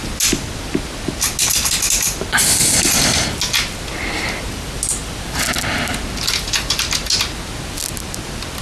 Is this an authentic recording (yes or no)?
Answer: yes